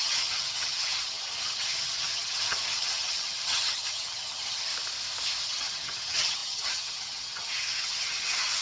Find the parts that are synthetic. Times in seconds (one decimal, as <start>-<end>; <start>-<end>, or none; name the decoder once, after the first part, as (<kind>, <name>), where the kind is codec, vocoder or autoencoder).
0.0-4.7 (vocoder, HiFi-GAN); 5.4-8.6